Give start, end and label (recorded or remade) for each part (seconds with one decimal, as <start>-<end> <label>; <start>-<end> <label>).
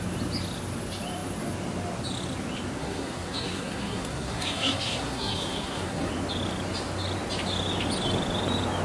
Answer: 0.0-2.8 recorded; 2.8-6.1 remade; 6.1-8.8 recorded